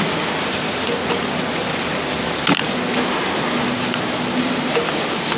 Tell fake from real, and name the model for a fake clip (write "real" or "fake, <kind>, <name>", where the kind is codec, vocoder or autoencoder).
real